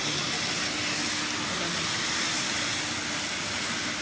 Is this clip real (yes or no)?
yes